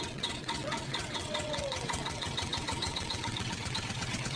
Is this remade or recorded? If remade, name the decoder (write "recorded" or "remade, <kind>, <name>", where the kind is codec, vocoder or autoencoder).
remade, vocoder, WaveNeXt